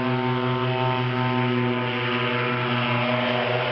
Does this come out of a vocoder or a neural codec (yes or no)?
no